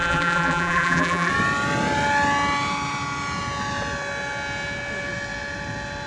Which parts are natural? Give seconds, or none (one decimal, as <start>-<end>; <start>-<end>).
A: 1.3-6.1